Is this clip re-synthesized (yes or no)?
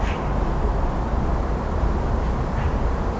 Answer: no